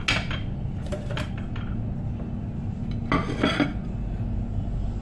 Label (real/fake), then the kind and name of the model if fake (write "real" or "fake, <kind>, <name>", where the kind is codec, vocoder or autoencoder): real